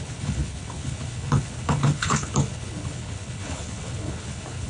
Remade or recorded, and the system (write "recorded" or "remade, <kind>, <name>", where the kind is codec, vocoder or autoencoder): remade, codec, HILCodec